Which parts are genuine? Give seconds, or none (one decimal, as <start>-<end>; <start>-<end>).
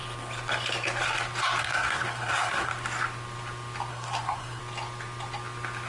0.0-1.6; 2.7-3.9; 4.6-5.9